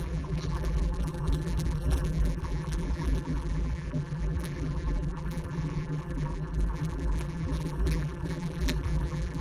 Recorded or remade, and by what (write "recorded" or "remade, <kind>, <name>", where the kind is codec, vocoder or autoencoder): remade, vocoder, BigVGAN v2